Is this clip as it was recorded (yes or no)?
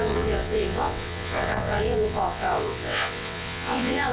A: no